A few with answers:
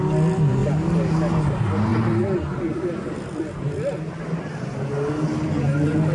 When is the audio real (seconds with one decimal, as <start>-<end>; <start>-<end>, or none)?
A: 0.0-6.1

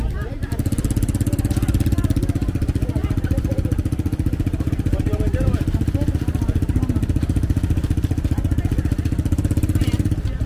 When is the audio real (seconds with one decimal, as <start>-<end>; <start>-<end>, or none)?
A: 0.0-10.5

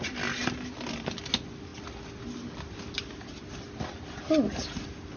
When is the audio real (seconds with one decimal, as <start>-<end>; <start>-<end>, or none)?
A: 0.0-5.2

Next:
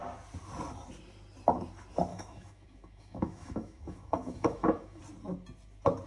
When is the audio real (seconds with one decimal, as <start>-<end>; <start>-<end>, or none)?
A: 0.0-2.1; 5.0-6.1

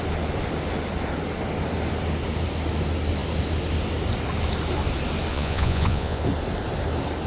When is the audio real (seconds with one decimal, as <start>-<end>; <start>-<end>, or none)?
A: 0.0-5.3; 6.2-7.3

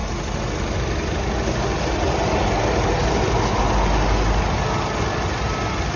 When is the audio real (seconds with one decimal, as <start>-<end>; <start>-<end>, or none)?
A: 0.0-6.0

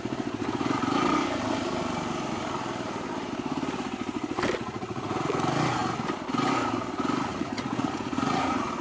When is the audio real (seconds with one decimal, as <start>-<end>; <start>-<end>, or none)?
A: 0.0-4.6; 5.2-7.3

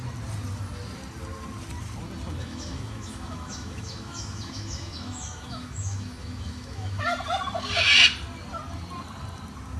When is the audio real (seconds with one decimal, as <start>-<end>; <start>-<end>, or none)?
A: 0.0-2.4; 7.0-9.8